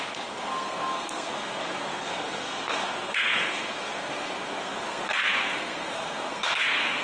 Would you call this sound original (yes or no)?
no